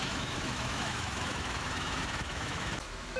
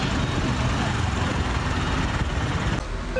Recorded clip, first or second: second